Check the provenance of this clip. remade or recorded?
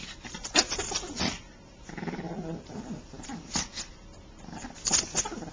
remade